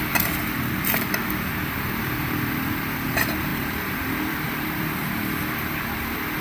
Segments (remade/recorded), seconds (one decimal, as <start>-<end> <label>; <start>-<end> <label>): 0.0-6.4 remade